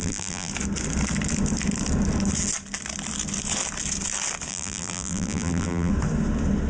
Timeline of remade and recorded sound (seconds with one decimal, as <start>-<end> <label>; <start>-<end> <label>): 0.0-0.5 remade; 0.5-4.5 recorded; 4.5-5.9 remade; 5.9-6.7 recorded

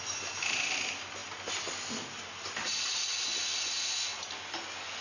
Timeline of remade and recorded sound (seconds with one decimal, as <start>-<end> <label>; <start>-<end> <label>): 0.0-5.0 recorded

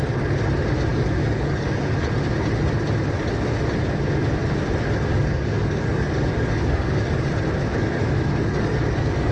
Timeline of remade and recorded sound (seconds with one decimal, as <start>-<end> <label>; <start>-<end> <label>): 0.0-0.9 recorded; 0.9-1.8 remade; 1.8-5.1 recorded; 5.1-7.3 remade; 7.3-7.7 recorded; 7.7-9.3 remade

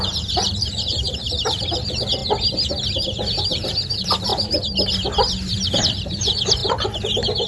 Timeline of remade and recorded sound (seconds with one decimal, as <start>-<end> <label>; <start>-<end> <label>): 0.0-2.2 remade; 2.2-3.4 recorded; 3.4-4.3 remade; 4.3-5.5 recorded; 5.5-7.5 remade